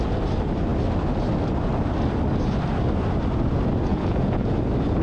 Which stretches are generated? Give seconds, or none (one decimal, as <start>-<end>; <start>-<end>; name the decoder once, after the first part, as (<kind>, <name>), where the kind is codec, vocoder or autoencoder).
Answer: 3.9-4.6 (vocoder, Vocos)